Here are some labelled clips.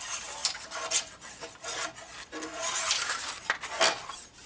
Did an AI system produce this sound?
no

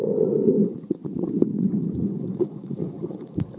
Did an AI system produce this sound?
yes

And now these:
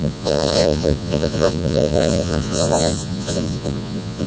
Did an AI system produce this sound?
yes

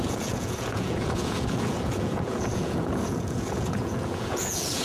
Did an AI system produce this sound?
yes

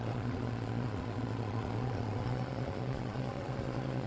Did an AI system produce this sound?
yes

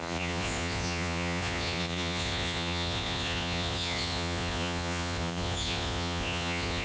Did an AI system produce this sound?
yes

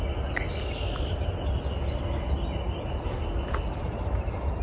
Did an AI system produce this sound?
no